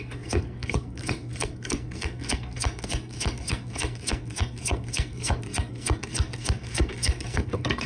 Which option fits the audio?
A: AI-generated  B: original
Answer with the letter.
A